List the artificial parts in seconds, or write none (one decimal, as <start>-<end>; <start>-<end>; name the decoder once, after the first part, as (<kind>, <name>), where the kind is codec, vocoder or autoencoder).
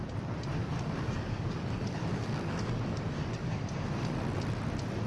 0.6-3.7 (codec, DAC)